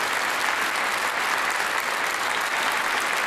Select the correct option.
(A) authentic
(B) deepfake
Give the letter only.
A